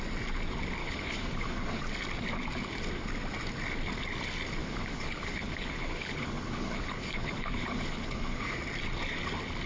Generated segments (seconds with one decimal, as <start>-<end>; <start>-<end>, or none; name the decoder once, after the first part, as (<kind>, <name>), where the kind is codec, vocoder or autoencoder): 0.8-1.8 (codec, HILCodec); 4.6-8.6